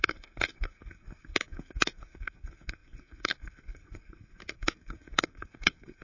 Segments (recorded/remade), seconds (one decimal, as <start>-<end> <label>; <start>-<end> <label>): 0.0-6.0 remade